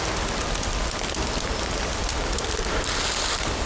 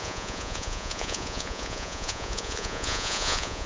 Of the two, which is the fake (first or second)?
second